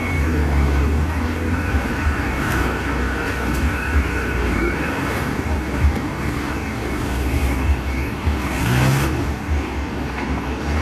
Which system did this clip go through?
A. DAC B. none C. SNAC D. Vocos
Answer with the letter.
A